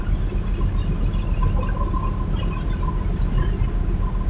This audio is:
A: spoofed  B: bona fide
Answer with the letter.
B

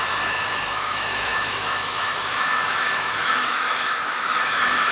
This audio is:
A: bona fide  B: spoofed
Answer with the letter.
B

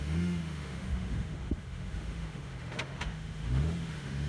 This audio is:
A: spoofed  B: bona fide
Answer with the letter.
A